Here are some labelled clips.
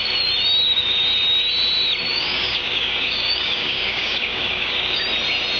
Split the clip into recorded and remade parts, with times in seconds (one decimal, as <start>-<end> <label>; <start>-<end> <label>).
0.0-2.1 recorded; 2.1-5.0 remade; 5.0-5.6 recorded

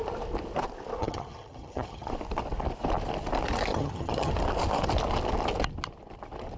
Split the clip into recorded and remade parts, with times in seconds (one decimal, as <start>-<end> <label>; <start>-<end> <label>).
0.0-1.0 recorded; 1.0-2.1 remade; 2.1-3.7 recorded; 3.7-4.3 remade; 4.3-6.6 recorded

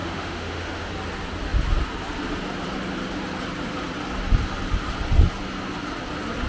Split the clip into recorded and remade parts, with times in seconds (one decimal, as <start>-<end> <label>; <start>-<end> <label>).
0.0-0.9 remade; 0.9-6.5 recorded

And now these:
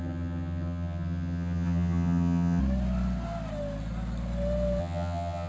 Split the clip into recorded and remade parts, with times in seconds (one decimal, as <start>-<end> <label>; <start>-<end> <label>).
0.0-2.6 remade; 2.6-4.8 recorded; 4.8-5.5 remade

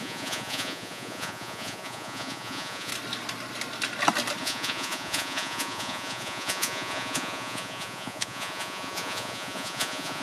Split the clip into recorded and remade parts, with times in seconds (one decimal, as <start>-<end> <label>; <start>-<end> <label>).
0.0-2.9 remade; 2.9-4.4 recorded; 4.4-10.2 remade

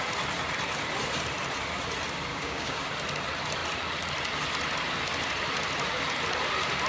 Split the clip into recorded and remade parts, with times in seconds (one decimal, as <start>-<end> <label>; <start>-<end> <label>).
0.0-2.3 recorded; 2.3-2.8 remade; 2.8-6.9 recorded